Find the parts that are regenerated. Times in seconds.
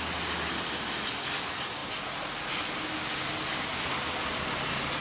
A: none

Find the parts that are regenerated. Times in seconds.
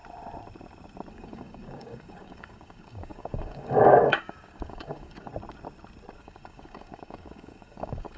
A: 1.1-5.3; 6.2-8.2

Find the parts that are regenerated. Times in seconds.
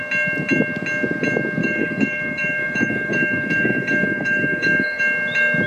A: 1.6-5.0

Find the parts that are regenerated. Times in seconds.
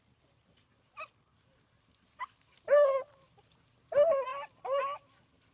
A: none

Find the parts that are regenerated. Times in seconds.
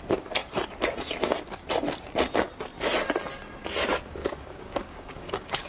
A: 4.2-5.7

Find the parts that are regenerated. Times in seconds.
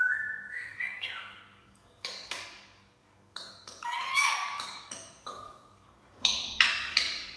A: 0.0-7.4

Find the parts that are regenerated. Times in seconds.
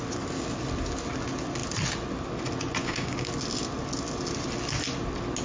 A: 2.8-3.3